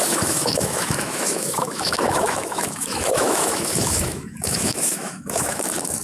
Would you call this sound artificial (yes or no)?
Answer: yes